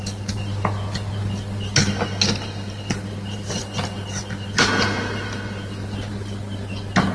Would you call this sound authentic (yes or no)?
yes